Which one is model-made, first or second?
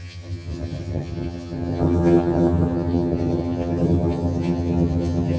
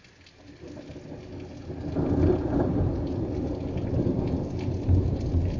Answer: first